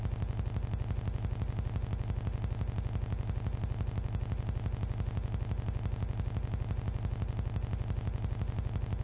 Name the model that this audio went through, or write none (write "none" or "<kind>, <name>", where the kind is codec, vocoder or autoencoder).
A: none